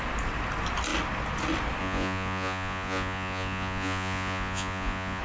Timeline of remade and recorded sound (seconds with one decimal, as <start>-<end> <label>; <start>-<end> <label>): 0.0-1.8 recorded; 1.8-5.2 remade

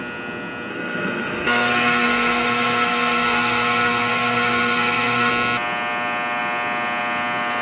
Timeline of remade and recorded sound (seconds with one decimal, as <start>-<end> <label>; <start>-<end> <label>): 0.0-0.7 recorded; 0.7-5.3 remade; 5.3-7.6 recorded

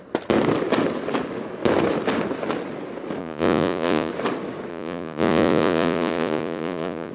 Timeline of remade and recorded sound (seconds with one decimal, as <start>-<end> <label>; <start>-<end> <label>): 0.0-3.2 recorded; 3.2-4.1 remade; 4.1-4.7 recorded; 4.7-7.1 remade

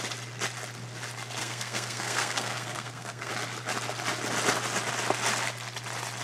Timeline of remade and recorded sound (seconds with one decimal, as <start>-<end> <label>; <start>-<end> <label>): 0.0-1.4 recorded; 1.4-3.3 remade; 3.3-6.2 recorded

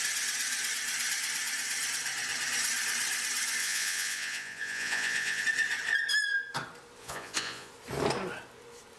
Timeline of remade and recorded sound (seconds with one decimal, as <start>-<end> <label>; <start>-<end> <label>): 0.0-3.6 recorded; 3.6-5.4 remade; 5.4-7.0 recorded; 7.0-7.7 remade; 7.7-9.0 recorded